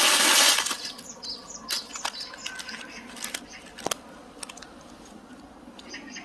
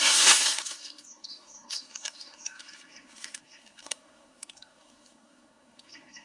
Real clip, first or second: first